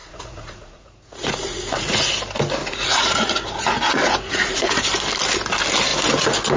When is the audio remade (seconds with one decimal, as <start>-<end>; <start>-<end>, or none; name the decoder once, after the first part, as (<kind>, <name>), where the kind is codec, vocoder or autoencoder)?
0.0-2.1 (vocoder, Vocos); 2.6-4.8